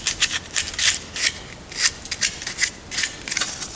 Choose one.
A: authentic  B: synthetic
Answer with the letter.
A